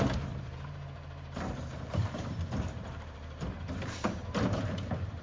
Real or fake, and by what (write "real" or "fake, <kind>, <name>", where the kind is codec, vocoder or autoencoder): fake, vocoder, BigVGAN v2